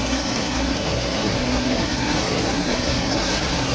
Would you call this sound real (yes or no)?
no